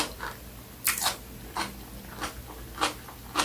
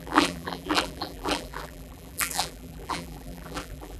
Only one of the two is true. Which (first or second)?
first